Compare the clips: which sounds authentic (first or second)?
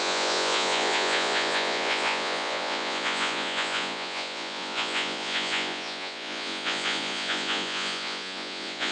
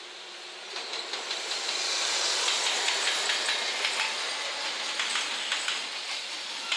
second